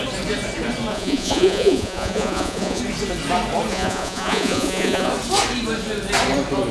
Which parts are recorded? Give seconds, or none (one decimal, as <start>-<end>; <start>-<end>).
0.0-0.9; 2.8-3.7; 5.1-6.7